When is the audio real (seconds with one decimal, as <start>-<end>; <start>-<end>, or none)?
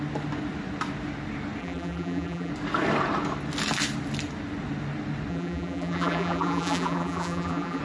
0.0-1.6; 2.5-5.3